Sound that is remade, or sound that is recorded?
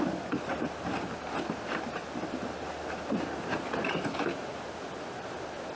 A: recorded